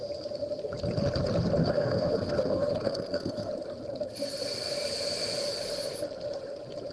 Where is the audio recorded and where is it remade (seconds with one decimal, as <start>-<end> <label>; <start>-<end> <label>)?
0.0-1.6 recorded; 1.6-3.5 remade; 3.5-6.9 recorded